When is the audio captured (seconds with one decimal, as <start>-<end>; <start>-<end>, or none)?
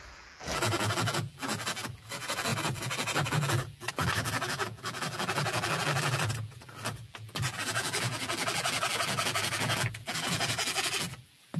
none